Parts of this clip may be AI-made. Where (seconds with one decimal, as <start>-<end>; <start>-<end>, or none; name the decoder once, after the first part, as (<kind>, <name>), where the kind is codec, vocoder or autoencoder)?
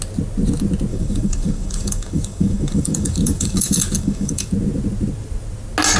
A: 0.9-4.5 (codec, DAC)